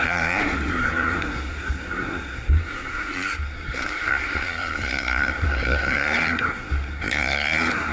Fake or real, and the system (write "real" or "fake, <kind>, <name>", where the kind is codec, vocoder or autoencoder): fake, codec, SNAC